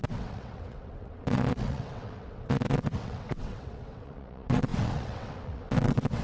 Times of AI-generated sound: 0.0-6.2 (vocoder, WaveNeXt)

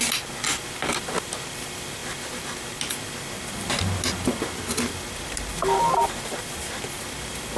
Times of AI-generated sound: none

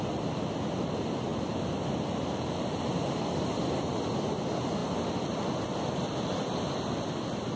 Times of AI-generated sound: none

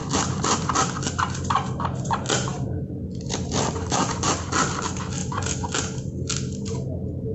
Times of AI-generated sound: 0.0-0.9 (vocoder, BigVGAN v2); 2.5-4.3; 5.2-5.8

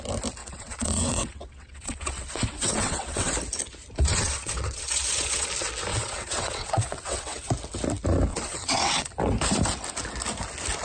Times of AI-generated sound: 0.4-3.3 (vocoder, WaveNeXt); 4.1-5.5; 5.9-7.5; 8.3-9.1

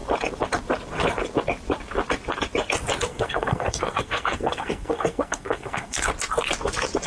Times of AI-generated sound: 3.1-6.1 (codec, SNAC)

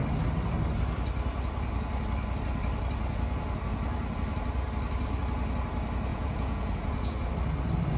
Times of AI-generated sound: 6.1-7.3 (vocoder, Vocos)

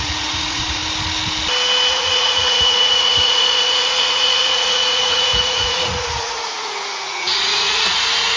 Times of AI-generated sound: 0.0-0.8 (vocoder, Vocos); 1.9-8.4